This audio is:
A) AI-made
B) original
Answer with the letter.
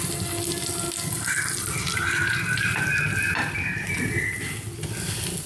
B